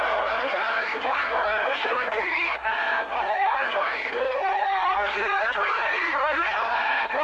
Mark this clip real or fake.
fake